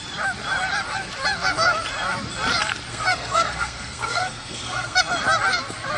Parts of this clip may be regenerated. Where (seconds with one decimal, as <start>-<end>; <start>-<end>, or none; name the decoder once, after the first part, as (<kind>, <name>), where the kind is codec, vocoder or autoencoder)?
2.9-5.0 (codec, SNAC)